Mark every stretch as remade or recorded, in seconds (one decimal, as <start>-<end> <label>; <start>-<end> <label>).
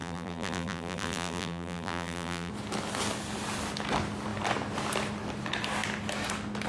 0.0-2.5 remade; 2.5-6.7 recorded